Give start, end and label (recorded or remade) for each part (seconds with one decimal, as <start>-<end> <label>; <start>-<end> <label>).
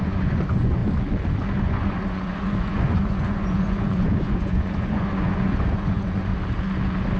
0.0-0.8 remade; 0.8-1.6 recorded; 1.6-6.3 remade; 6.3-7.2 recorded